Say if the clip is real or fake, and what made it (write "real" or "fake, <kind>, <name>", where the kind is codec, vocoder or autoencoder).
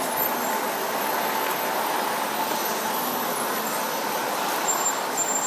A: real